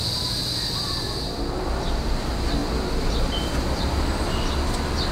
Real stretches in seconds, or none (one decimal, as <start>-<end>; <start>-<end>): 0.0-5.1

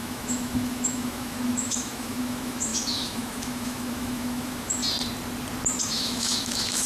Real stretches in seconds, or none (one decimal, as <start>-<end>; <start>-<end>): 4.8-5.8

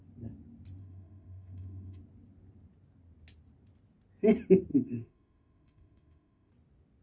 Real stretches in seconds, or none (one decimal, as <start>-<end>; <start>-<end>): 0.0-0.8; 2.0-4.7; 6.5-7.0